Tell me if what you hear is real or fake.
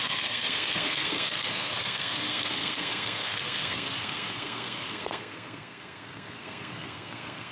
fake